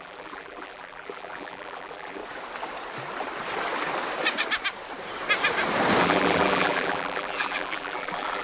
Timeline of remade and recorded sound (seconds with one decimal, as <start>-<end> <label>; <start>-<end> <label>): 0.0-2.2 remade; 2.2-6.0 recorded; 6.0-8.4 remade